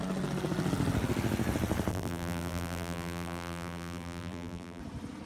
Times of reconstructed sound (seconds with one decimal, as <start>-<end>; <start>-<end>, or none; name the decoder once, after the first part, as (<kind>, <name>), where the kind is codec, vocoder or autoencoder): 1.9-4.8 (vocoder, BigVGAN v2)